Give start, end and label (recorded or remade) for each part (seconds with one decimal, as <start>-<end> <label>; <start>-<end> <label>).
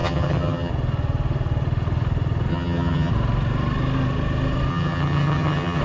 0.0-0.7 remade; 0.7-2.5 recorded; 2.5-3.1 remade; 3.1-4.7 recorded; 4.7-5.8 remade